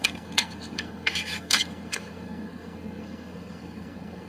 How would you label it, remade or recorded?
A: remade